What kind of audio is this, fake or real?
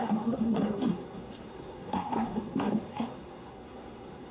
fake